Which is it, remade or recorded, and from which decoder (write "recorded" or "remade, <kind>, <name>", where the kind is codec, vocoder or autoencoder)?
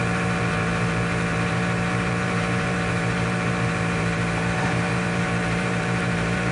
remade, vocoder, BigVGAN v2